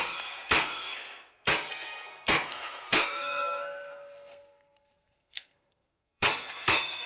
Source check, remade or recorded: remade